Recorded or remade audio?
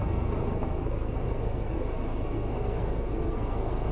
remade